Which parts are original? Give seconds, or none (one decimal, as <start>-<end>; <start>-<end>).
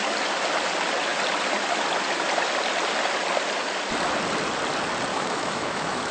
0.0-5.1